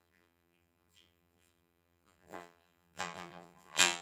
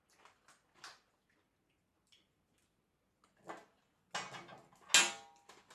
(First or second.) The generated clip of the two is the first